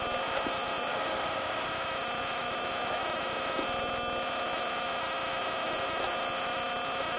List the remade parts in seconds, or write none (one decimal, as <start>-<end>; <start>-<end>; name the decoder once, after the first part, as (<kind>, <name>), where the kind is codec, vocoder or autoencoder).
0.9-1.7 (codec, DAC)